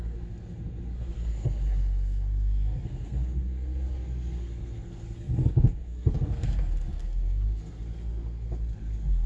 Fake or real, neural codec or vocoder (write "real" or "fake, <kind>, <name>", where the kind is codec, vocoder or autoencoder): fake, codec, SNAC